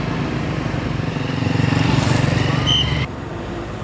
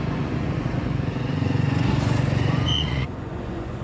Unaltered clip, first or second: first